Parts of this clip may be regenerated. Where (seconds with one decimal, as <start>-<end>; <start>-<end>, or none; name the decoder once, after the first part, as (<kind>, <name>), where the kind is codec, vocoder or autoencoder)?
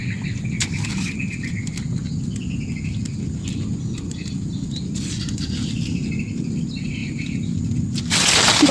7.0-7.6 (vocoder, BigVGAN v2)